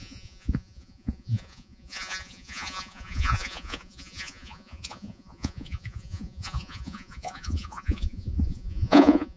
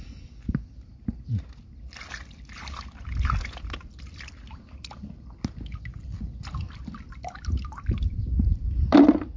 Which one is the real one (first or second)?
second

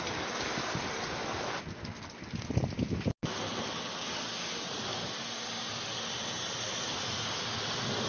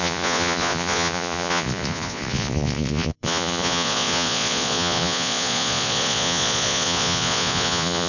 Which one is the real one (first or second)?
first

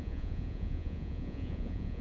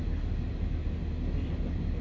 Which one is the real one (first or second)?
second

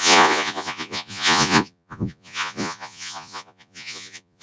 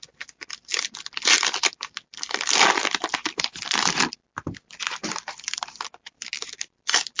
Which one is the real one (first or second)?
second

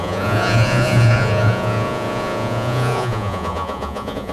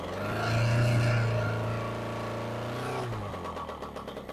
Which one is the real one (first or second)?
second